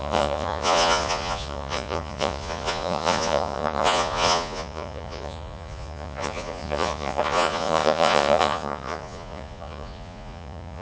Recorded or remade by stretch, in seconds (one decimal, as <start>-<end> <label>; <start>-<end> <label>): 0.0-10.8 remade